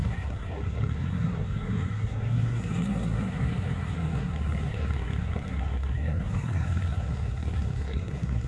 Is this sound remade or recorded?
remade